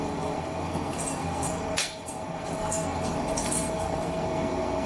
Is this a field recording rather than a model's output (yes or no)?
no